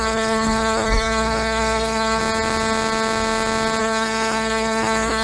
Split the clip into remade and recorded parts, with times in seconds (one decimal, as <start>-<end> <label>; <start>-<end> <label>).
0.0-2.2 remade; 2.2-3.8 recorded; 3.8-5.2 remade